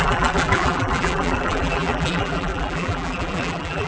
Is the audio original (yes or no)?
no